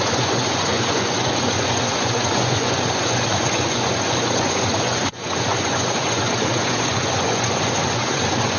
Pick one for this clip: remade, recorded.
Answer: remade